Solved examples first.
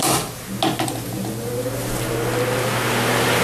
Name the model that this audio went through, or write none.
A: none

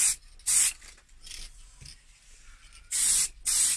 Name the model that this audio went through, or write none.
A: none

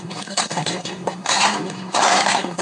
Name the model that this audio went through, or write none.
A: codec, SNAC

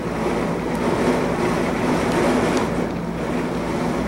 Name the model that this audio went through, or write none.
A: none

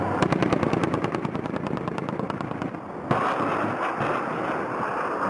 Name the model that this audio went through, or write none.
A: none